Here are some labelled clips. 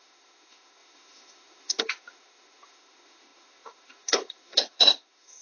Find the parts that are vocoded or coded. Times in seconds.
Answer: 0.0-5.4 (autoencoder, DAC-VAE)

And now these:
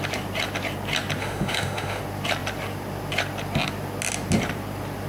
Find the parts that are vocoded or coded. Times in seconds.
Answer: 1.2-2.0 (autoencoder, DAC-VAE)

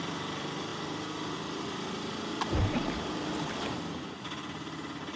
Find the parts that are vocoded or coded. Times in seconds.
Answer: none

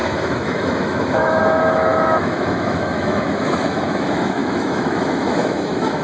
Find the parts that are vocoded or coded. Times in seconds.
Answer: 0.0-6.0 (autoencoder, DAC-VAE)

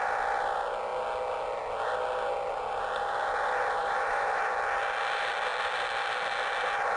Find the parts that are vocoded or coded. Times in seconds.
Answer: 3.8-4.4 (autoencoder, DAC-VAE)